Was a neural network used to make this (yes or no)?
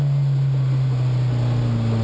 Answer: no